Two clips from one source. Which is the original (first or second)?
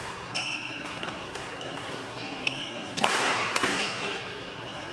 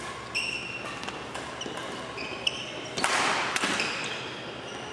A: second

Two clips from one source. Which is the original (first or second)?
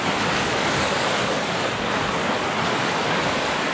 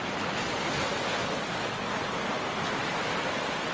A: second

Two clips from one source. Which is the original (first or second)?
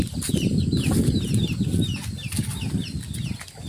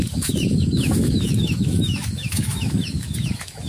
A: first